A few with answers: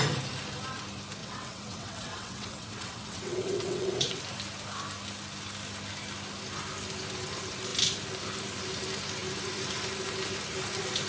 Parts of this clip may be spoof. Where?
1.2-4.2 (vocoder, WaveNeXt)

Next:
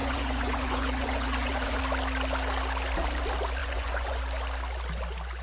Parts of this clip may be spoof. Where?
0.0-1.8 (vocoder, Vocos); 3.6-4.2